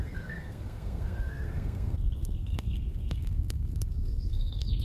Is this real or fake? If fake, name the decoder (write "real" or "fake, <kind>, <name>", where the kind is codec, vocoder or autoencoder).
fake, codec, SNAC